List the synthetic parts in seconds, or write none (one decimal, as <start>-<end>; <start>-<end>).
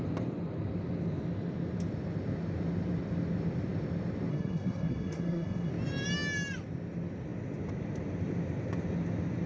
4.3-5.7